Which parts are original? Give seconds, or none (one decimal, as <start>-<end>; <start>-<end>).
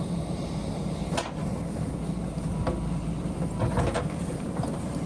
1.0-3.7